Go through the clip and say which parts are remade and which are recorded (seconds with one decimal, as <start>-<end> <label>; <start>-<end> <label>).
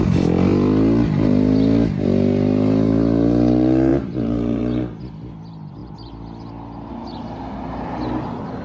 0.0-3.9 recorded; 3.9-4.8 remade; 4.8-8.6 recorded